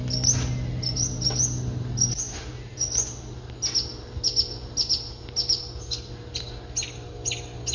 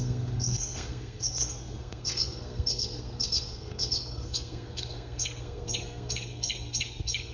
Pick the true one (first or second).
first